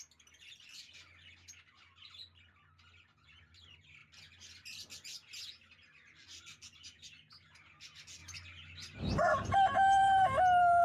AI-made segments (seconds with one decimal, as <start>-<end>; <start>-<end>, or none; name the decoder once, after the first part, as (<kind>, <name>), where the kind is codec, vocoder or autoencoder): 10.0-10.8 (vocoder, BigVGAN v2)